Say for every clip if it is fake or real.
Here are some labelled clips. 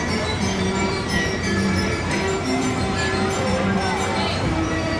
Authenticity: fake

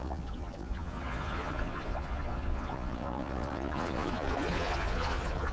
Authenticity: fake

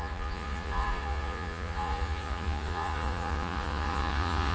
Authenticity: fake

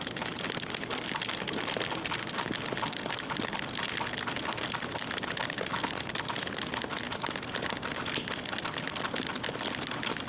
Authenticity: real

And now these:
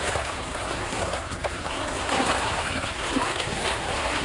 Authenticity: fake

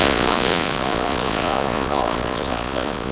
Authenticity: fake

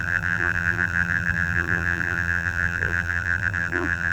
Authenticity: fake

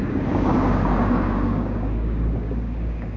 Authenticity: fake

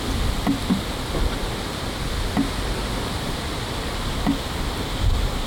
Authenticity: real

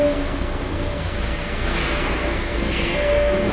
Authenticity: fake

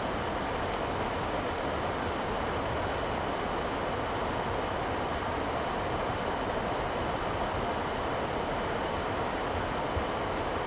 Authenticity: real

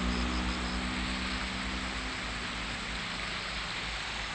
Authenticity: real